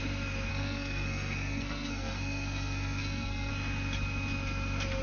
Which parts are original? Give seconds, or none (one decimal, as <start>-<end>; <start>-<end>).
0.0-0.5; 3.5-5.0